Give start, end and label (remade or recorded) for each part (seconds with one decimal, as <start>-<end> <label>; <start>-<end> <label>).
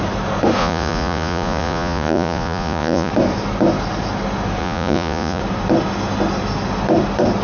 0.0-0.6 recorded; 0.6-3.1 remade; 3.1-4.6 recorded; 4.6-5.4 remade; 5.4-7.4 recorded